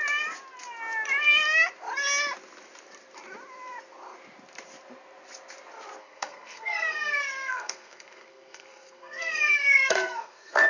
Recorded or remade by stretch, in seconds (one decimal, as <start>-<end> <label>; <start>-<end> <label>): 0.0-6.0 recorded; 6.0-10.7 remade

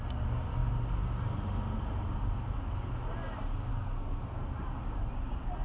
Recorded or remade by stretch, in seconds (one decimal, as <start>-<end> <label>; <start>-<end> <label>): 0.0-3.7 recorded; 3.7-4.5 remade; 4.5-5.6 recorded

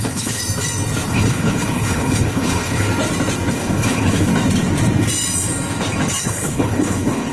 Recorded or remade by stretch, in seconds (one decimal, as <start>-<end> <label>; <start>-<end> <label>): 0.0-0.4 remade; 0.4-1.1 recorded; 1.1-2.9 remade; 2.9-3.5 recorded; 3.5-4.3 remade; 4.3-6.2 recorded; 6.2-7.3 remade

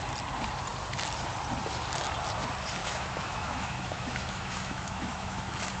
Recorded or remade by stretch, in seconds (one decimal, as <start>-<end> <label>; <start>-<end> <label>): 0.0-2.8 recorded; 2.8-5.8 remade

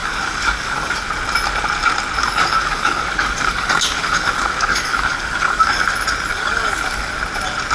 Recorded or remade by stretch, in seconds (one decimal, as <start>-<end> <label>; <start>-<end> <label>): 0.0-1.1 remade; 1.1-2.2 recorded; 2.2-5.8 remade; 5.8-6.3 recorded; 6.3-7.1 remade; 7.1-7.7 recorded

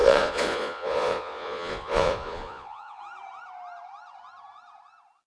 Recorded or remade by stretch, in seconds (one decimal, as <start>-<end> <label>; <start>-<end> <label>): 0.0-3.0 remade; 3.0-5.3 recorded

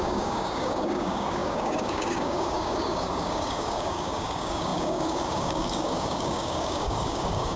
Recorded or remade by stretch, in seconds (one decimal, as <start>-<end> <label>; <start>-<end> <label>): 0.0-7.6 remade